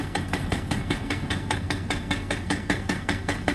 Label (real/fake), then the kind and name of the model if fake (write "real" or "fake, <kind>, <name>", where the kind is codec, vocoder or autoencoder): fake, codec, SNAC